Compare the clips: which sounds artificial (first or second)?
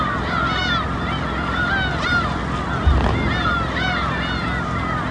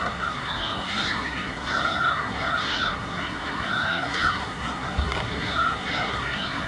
second